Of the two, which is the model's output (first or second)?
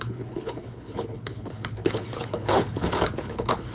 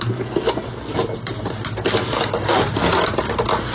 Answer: first